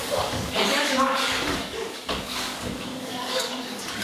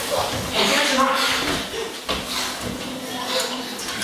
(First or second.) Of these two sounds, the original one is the second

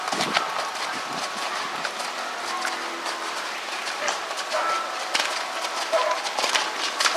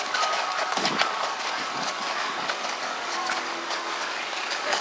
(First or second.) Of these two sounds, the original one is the first